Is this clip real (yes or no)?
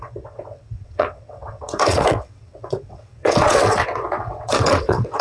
no